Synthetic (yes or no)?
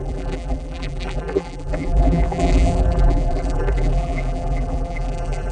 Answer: yes